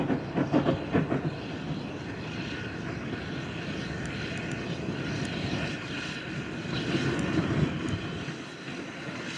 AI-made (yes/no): no